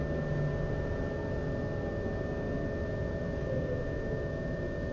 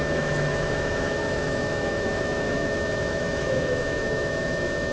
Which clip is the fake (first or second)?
second